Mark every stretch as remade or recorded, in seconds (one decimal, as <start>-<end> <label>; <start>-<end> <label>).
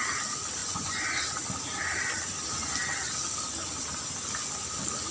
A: 0.0-0.6 recorded; 0.6-1.2 remade; 1.2-5.1 recorded